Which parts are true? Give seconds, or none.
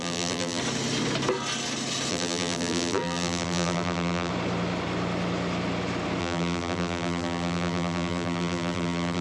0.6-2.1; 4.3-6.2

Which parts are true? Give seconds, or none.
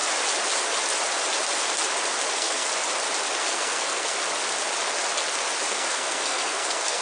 0.0-2.3; 2.7-3.4; 4.2-5.7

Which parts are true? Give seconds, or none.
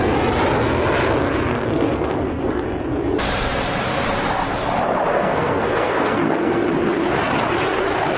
0.0-1.5; 2.5-5.1; 6.7-8.2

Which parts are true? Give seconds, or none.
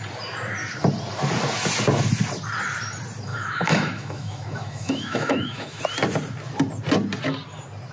0.0-3.3; 5.8-7.9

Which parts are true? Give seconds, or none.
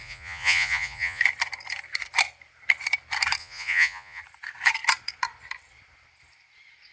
1.2-3.4; 4.2-6.9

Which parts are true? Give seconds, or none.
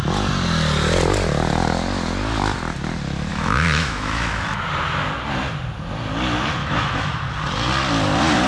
0.0-3.3; 4.6-6.6; 7.2-8.5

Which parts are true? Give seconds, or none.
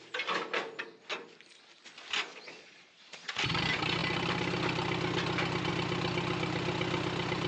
0.0-2.3; 3.4-7.5